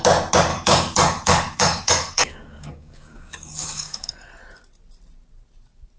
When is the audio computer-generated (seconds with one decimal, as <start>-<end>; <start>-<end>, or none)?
0.5-4.1